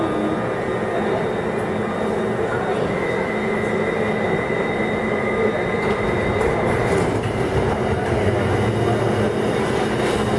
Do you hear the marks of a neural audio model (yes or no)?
no